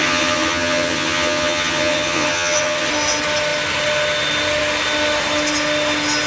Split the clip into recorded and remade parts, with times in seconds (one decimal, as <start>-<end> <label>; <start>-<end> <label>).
0.0-2.9 remade; 2.9-6.3 recorded